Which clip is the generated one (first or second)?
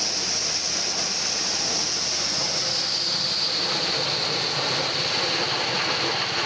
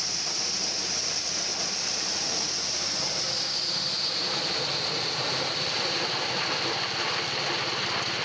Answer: second